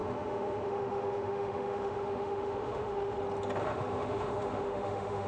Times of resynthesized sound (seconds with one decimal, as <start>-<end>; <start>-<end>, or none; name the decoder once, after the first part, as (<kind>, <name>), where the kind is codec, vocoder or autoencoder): 0.0-3.2 (autoencoder, DAC-VAE); 3.6-5.3